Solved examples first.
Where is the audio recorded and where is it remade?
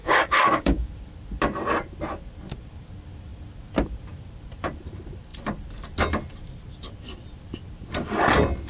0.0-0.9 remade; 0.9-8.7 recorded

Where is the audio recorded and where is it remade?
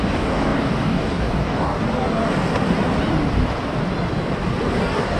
0.0-1.8 remade; 1.8-4.8 recorded; 4.8-5.2 remade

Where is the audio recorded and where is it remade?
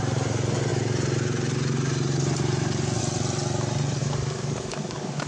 0.0-4.0 recorded; 4.0-5.3 remade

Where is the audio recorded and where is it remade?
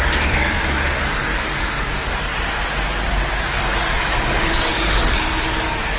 0.0-2.3 remade; 2.3-3.4 recorded; 3.4-6.0 remade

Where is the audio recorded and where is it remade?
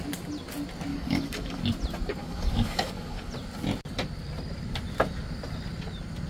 0.0-0.9 recorded; 0.9-1.6 remade; 1.6-2.2 recorded; 2.2-3.3 remade; 3.3-6.3 recorded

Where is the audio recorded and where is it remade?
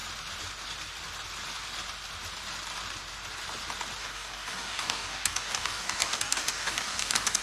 0.0-4.0 recorded; 4.0-7.4 remade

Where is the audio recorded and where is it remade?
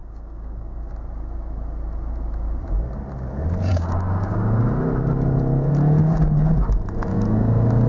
0.0-0.9 remade; 0.9-3.7 recorded; 3.7-4.6 remade; 4.6-7.1 recorded; 7.1-7.9 remade